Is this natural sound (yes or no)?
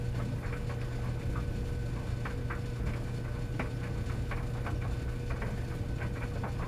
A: yes